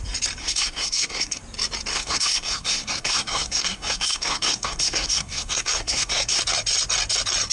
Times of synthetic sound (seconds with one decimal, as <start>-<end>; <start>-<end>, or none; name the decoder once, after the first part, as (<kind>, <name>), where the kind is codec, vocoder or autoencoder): 0.4-1.4 (codec, SNAC); 1.9-6.4